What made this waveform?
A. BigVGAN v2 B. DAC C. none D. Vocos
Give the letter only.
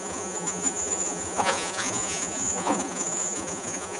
D